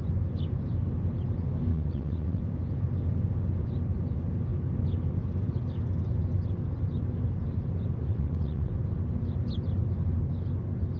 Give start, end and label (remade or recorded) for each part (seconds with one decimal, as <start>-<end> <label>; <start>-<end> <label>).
0.0-1.7 recorded; 1.7-2.4 remade; 2.4-8.1 recorded; 8.1-8.7 remade; 8.7-11.0 recorded